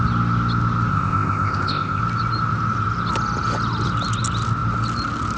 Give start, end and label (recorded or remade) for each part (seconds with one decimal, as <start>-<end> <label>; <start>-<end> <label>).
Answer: 0.0-0.9 recorded; 0.9-2.0 remade; 2.0-5.4 recorded